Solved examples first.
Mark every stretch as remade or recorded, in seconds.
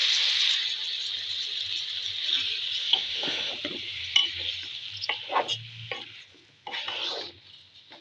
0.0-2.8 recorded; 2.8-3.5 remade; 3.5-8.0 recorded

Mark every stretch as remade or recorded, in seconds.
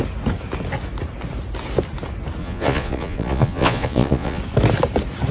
0.0-2.4 recorded; 2.4-4.4 remade; 4.4-5.3 recorded